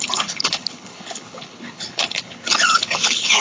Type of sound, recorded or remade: remade